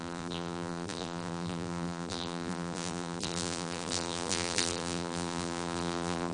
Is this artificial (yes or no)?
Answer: yes